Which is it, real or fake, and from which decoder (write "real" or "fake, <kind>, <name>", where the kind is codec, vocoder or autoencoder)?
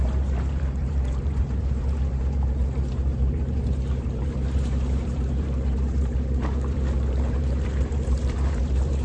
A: fake, vocoder, BigVGAN v2